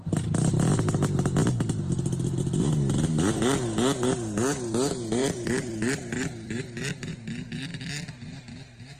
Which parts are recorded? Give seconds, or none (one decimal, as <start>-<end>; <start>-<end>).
0.0-5.2; 6.6-9.0

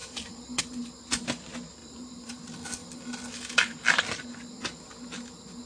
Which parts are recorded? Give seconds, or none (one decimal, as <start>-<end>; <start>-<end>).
0.6-1.8; 2.4-5.7

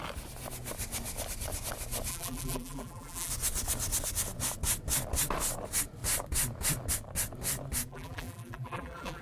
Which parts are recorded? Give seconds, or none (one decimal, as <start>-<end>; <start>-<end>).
0.0-2.1; 3.3-7.9

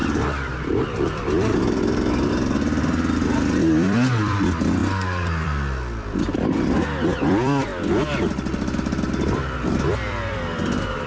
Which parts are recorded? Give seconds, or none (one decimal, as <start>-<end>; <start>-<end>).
7.7-9.7

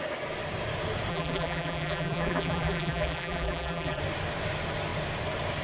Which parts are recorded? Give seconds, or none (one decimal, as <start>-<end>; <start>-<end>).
0.0-1.1; 4.0-5.6

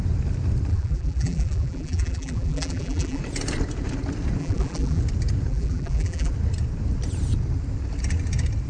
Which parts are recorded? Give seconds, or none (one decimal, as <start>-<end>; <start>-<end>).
0.0-0.7; 3.2-4.4; 5.0-5.5; 6.3-8.7

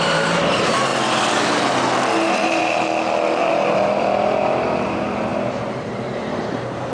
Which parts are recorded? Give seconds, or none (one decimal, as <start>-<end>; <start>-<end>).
0.9-1.7; 2.6-3.4

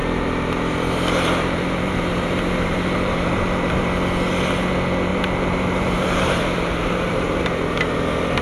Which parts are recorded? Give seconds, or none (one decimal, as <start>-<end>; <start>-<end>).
3.9-5.1; 7.4-8.4